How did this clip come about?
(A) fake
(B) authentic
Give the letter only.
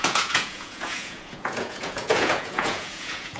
A